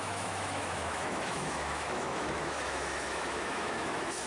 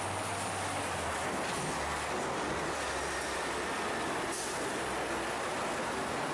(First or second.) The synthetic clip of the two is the first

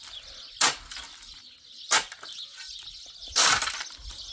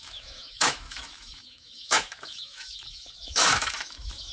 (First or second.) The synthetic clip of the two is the second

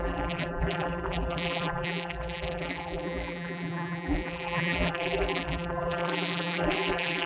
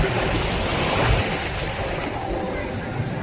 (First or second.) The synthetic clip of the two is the first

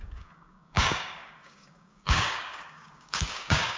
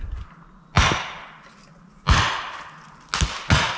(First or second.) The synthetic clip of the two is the first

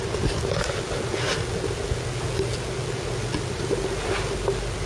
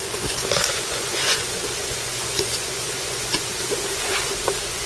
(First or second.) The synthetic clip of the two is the second